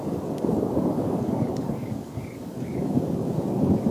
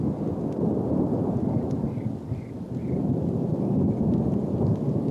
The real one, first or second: second